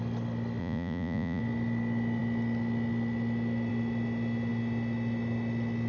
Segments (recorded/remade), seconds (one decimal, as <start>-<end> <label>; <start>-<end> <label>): 0.0-0.6 recorded; 0.6-1.4 remade; 1.4-5.9 recorded